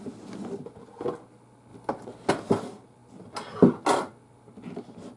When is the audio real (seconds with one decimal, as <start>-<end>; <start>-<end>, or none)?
0.0-5.2